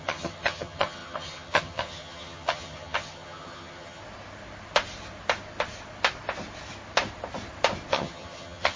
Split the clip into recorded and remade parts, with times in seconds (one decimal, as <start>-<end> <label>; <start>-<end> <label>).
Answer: 0.0-4.0 remade; 4.0-7.9 recorded; 7.9-8.8 remade